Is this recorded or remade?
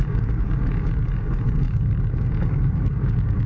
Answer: remade